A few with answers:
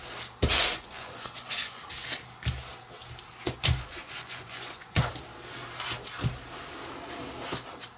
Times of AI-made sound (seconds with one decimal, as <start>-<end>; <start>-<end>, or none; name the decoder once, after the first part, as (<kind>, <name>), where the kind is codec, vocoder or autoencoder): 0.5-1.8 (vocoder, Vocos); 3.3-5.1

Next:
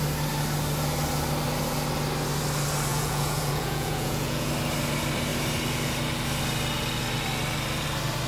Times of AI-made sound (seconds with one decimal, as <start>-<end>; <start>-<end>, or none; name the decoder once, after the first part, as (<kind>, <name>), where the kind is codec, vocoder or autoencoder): 2.9-4.5 (vocoder, Vocos)

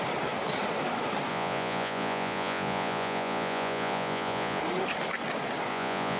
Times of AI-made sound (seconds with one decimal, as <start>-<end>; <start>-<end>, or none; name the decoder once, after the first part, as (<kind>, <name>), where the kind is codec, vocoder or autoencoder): 1.3-4.6 (vocoder, Vocos); 5.7-6.2

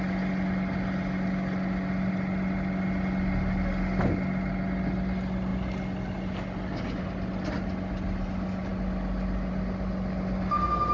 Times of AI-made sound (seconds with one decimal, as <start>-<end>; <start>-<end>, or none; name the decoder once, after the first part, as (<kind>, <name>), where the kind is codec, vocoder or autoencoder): none

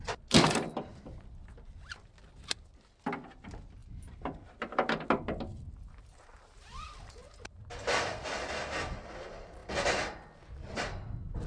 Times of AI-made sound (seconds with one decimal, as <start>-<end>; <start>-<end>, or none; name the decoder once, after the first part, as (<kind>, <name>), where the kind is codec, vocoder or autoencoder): none